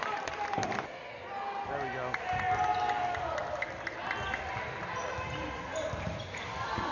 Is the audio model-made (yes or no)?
no